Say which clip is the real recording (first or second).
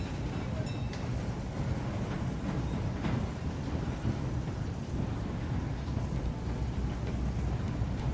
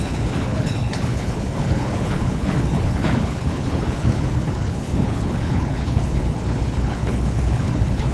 first